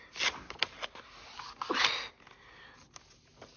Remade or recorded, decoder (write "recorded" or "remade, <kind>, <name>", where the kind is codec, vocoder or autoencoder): recorded